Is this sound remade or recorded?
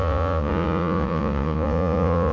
remade